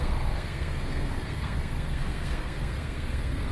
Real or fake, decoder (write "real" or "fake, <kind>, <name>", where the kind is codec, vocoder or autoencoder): fake, codec, SNAC